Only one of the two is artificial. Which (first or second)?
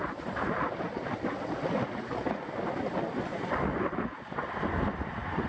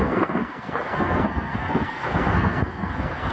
second